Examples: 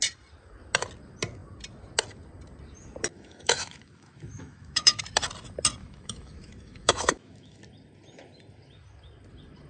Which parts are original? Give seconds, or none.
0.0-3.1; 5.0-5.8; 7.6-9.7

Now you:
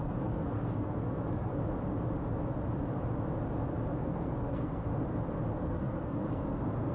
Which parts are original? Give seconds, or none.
1.5-4.0; 4.9-5.6

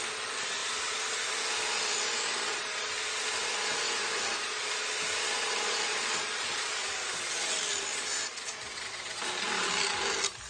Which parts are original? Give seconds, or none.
0.0-5.9; 7.5-7.9; 9.2-10.5